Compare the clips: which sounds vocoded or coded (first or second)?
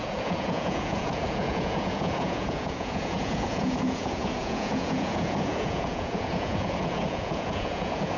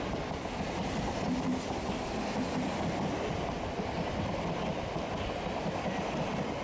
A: first